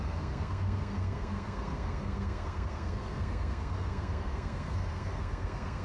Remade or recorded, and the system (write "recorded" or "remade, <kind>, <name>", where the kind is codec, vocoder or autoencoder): remade, codec, SNAC